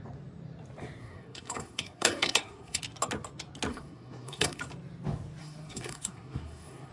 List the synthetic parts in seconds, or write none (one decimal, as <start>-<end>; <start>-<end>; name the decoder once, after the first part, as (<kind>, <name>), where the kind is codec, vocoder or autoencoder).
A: 1.0-2.8 (codec, SNAC); 3.7-4.6; 5.4-6.9